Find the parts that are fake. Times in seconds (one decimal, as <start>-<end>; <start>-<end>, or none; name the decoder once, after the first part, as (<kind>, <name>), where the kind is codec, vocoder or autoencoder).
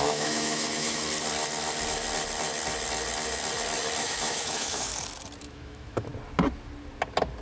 0.0-1.0 (autoencoder, DAC-VAE); 4.0-4.9; 5.4-6.1